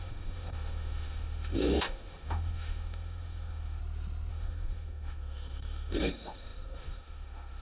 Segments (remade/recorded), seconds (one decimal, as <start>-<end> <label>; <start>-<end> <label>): 0.0-3.8 remade; 3.8-4.3 recorded; 4.3-7.6 remade